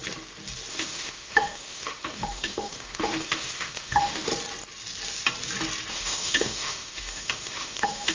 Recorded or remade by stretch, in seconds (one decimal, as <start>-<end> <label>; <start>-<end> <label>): 0.0-0.7 recorded; 0.7-4.3 remade; 4.3-5.9 recorded; 5.9-8.1 remade